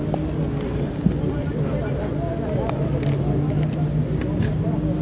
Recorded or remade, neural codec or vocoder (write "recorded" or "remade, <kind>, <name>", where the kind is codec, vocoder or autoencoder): recorded